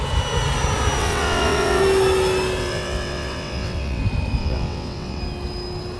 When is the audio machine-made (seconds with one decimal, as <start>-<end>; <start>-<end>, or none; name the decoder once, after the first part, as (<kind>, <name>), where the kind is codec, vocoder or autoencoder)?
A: 1.0-1.8 (vocoder, WaveNeXt); 2.6-4.0; 4.4-5.2